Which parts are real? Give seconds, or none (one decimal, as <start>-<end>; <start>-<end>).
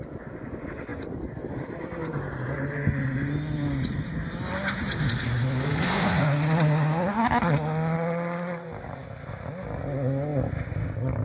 0.0-5.7; 6.2-11.2